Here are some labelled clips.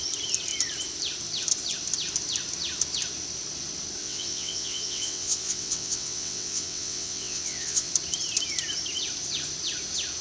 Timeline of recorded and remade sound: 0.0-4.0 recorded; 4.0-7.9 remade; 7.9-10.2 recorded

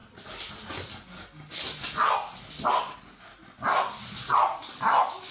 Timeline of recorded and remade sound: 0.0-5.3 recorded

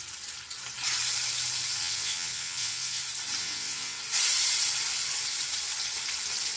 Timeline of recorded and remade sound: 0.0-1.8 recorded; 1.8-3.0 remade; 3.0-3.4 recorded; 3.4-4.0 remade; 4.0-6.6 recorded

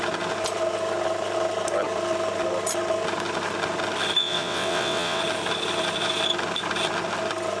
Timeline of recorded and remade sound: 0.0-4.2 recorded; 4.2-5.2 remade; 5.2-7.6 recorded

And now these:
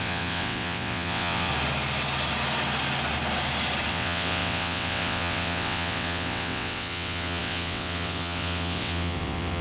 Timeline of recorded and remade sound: 0.0-1.5 remade; 1.5-3.9 recorded; 3.9-9.6 remade

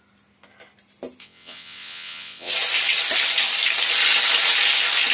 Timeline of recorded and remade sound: 0.0-1.2 recorded; 1.2-2.5 remade; 2.5-5.1 recorded

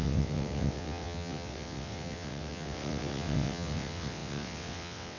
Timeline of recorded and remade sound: 0.0-5.2 remade

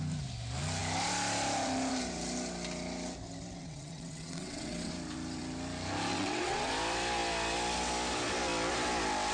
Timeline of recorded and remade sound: 0.0-3.6 recorded; 3.6-4.9 remade; 4.9-6.1 recorded; 6.1-6.7 remade; 6.7-9.3 recorded